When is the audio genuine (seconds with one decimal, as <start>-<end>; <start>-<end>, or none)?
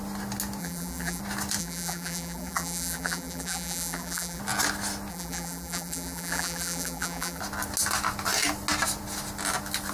0.0-0.6; 1.2-1.6; 4.4-5.1; 7.4-9.9